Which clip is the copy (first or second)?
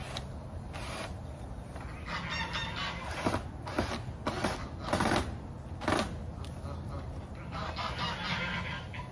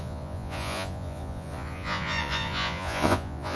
second